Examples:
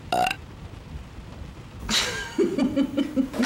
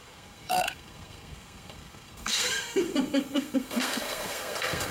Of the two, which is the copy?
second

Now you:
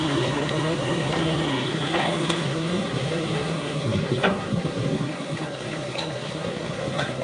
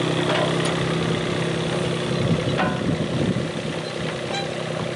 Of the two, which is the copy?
first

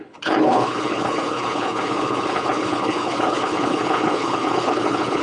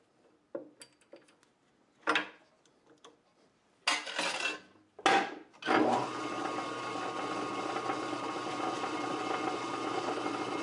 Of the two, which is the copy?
first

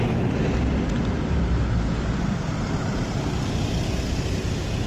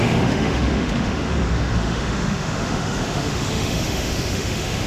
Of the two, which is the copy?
second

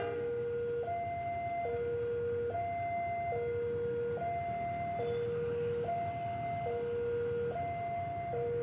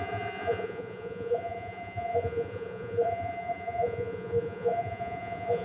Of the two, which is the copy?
second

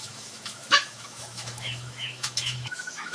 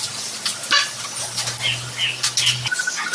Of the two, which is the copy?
first